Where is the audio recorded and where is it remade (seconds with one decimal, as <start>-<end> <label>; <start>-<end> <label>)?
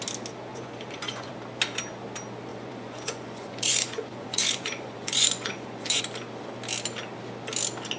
0.0-0.5 recorded; 0.5-1.3 remade; 1.3-2.5 recorded; 2.5-6.0 remade; 6.0-8.0 recorded